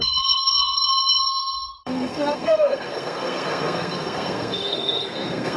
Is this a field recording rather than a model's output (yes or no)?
no